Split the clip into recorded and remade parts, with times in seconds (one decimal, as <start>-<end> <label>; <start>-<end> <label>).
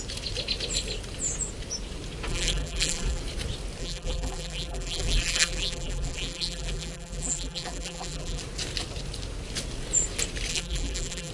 0.0-2.3 recorded; 2.3-3.2 remade; 3.2-3.8 recorded; 3.8-8.4 remade; 8.4-10.5 recorded; 10.5-11.3 remade